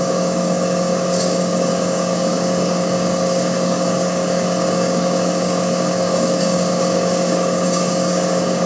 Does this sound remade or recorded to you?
remade